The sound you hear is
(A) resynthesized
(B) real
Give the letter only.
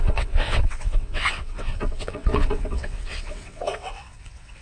A